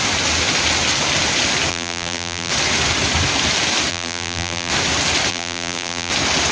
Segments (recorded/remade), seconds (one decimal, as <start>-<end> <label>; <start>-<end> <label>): 0.0-1.7 recorded; 1.7-2.5 remade; 2.5-3.9 recorded; 3.9-4.7 remade; 4.7-5.3 recorded; 5.3-6.1 remade; 6.1-6.5 recorded